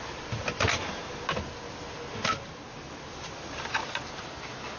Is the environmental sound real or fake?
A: real